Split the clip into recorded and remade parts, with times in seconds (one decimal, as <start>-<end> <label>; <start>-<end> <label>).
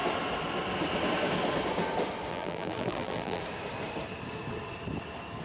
0.0-2.3 recorded; 2.3-3.4 remade; 3.4-5.4 recorded